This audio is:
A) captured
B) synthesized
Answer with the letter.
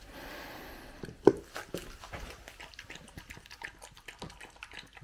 A